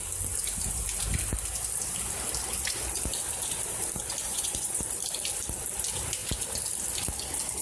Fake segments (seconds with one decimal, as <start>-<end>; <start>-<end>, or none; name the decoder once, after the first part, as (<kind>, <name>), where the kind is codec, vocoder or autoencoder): 4.2-4.8 (vocoder, Vocos)